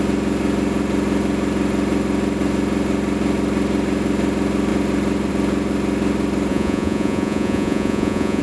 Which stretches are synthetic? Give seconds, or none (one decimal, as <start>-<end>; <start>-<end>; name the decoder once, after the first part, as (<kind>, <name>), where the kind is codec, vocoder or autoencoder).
6.5-8.4 (vocoder, Vocos)